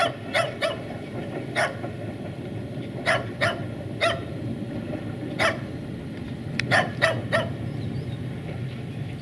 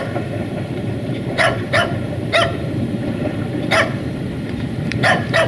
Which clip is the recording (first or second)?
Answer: first